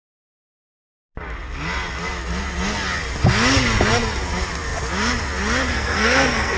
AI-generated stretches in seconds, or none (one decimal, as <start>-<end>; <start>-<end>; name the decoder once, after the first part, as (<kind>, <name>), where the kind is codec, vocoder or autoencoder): 5.7-6.6 (codec, SNAC)